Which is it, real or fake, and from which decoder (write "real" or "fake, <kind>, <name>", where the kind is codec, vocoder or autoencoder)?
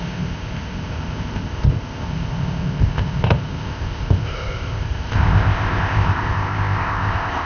fake, codec, ZipCodec